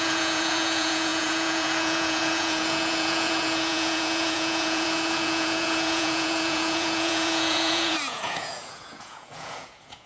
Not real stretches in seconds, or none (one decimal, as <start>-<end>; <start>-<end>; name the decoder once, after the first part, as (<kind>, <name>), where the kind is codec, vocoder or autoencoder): 0.0-10.1 (vocoder, Vocos)